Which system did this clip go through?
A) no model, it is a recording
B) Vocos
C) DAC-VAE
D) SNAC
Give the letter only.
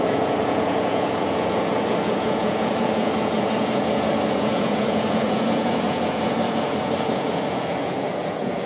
B